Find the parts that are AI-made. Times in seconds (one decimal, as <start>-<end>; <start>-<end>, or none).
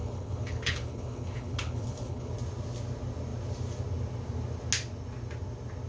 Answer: 0.0-2.3